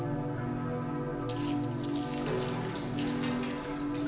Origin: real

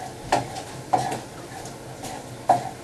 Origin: real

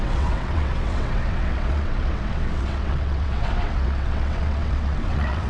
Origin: fake